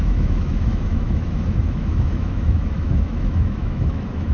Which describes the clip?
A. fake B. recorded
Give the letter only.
A